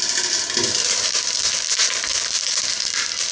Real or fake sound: real